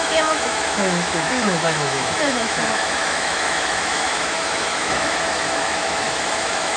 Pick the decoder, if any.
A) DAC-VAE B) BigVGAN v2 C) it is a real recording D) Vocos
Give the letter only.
A